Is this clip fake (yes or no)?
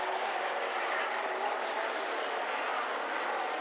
no